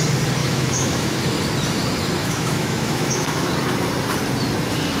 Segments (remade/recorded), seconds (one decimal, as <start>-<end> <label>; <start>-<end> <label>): 0.0-0.4 recorded; 0.4-1.2 remade; 1.2-2.2 recorded; 2.2-3.5 remade; 3.5-5.0 recorded